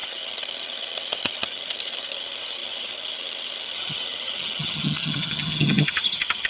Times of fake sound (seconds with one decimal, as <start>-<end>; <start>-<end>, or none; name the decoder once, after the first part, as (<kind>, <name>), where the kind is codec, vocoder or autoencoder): 0.0-6.5 (vocoder, HiFi-GAN)